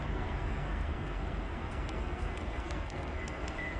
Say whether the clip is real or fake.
fake